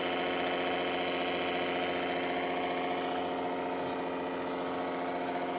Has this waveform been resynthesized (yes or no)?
no